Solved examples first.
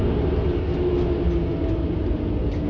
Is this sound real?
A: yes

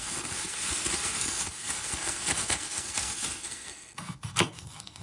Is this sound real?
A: no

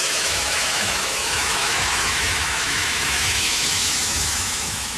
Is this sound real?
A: no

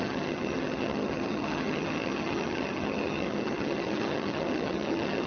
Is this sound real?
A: no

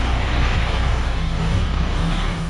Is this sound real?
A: no